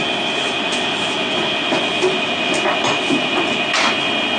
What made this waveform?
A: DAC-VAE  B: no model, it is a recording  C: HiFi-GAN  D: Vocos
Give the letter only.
B